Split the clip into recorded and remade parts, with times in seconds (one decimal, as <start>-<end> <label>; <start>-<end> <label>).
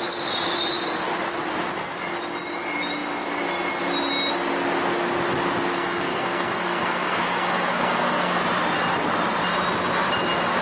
0.0-5.7 recorded; 5.7-8.4 remade; 8.4-10.6 recorded